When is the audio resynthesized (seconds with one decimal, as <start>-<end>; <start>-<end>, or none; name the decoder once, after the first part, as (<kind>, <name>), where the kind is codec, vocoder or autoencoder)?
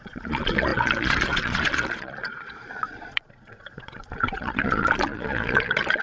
0.0-6.0 (vocoder, Vocos)